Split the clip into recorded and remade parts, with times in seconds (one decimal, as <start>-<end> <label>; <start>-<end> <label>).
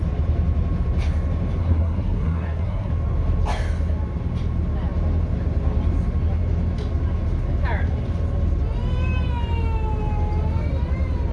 0.0-1.6 recorded; 1.6-2.9 remade; 2.9-11.3 recorded